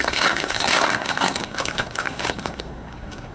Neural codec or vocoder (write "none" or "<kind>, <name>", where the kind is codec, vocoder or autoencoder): codec, SNAC